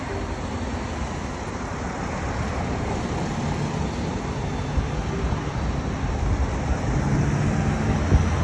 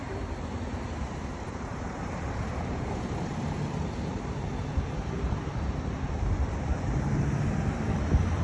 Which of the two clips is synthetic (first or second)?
second